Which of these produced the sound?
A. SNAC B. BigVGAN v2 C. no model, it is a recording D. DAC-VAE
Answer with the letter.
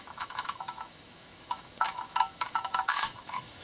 D